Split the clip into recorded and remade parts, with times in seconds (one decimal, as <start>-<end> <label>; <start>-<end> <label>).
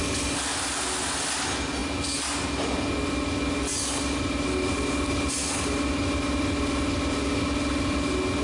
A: 0.0-8.4 recorded